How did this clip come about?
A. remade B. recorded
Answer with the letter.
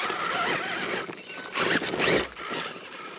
B